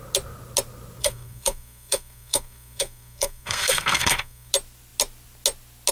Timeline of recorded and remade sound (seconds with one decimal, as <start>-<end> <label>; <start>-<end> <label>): 0.0-1.0 recorded; 1.0-4.5 remade; 4.5-5.9 recorded